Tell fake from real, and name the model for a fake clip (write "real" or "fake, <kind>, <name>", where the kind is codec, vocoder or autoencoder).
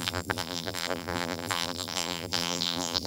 fake, vocoder, BigVGAN v2